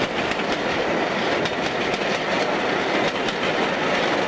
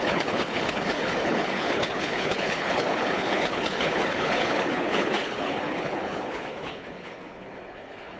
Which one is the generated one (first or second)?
second